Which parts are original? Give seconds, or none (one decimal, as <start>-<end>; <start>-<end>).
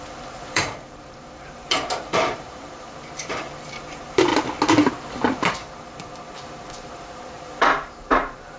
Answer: 4.3-4.9